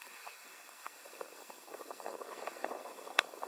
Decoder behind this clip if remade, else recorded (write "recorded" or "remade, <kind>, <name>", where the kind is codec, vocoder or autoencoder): remade, codec, SNAC